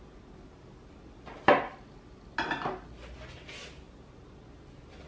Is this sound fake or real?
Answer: real